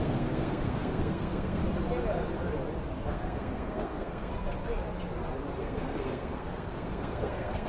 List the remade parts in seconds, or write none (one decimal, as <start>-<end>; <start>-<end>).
0.0-1.6; 3.1-4.3; 5.6-7.7